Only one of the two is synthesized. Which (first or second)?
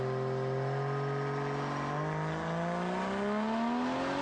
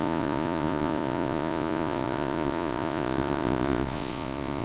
second